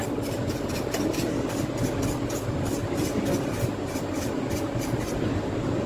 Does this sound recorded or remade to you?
recorded